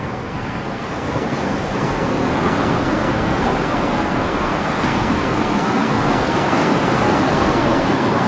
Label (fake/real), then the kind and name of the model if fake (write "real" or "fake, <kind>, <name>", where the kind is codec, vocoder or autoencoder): fake, codec, SNAC